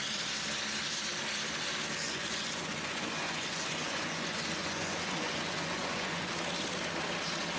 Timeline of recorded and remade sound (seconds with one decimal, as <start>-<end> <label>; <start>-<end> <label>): 0.0-2.0 recorded; 2.0-6.3 remade; 6.3-7.6 recorded